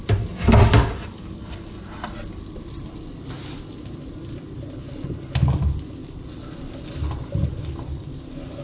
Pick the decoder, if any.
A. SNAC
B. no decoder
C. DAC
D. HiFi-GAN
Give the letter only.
B